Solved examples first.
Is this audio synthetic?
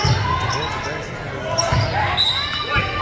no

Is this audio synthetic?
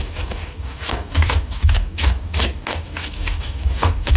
yes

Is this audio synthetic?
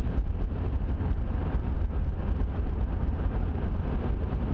no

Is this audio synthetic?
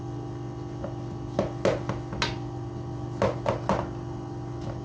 no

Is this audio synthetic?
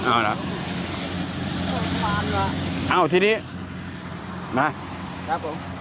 no